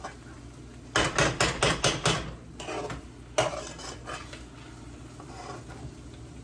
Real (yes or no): yes